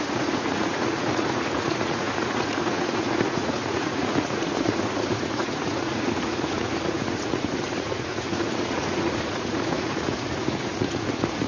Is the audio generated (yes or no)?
yes